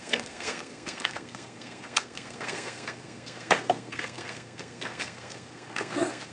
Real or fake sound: fake